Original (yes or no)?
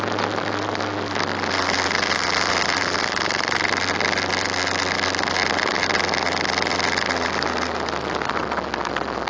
yes